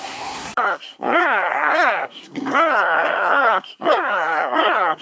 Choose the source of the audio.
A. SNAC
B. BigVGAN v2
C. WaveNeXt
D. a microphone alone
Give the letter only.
A